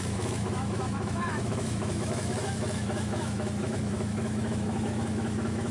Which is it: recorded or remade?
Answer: remade